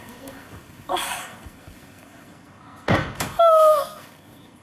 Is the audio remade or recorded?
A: remade